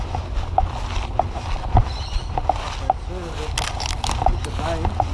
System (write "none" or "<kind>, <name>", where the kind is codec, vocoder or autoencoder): none